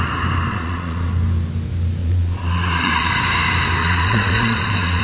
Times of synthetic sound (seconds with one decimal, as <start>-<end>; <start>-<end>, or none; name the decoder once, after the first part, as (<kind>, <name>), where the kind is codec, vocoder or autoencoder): 0.5-1.1 (vocoder, Vocos); 2.0-3.1; 3.8-5.0